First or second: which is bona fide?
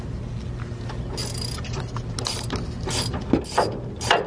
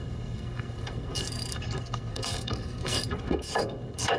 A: first